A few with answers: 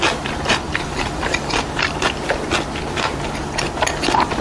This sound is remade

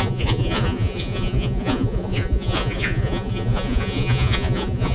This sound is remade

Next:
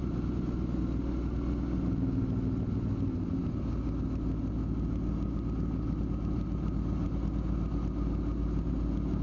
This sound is recorded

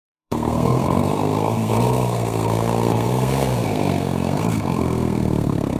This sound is remade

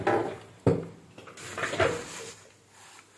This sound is recorded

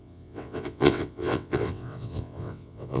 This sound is remade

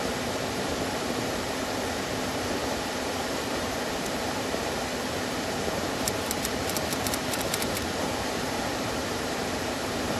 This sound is remade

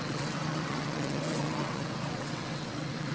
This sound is remade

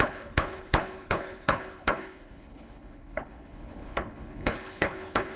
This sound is remade